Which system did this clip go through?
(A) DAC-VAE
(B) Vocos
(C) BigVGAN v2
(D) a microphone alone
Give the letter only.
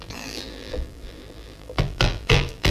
C